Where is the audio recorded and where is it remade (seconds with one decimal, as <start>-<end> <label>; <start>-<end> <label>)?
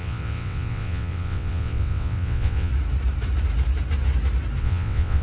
0.0-2.7 remade; 2.7-4.6 recorded; 4.6-5.2 remade